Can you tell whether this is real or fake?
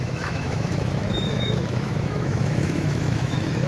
fake